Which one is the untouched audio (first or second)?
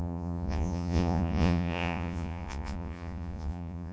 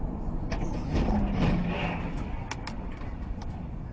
second